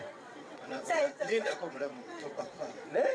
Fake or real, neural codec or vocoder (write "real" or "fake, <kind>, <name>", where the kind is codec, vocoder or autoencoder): fake, vocoder, WaveNeXt